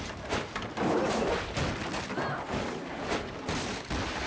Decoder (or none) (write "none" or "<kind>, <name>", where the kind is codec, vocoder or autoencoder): none